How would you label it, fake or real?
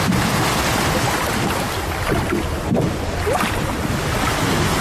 real